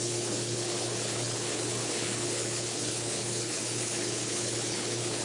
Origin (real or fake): fake